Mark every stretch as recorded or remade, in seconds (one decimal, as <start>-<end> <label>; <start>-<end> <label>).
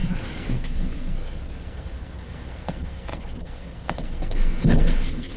0.0-5.4 remade